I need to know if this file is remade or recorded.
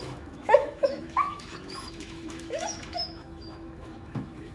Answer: remade